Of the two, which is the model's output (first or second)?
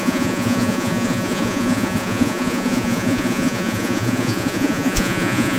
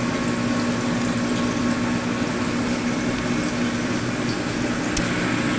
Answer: first